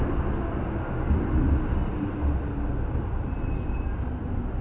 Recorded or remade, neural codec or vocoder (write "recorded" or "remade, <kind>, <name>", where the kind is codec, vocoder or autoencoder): recorded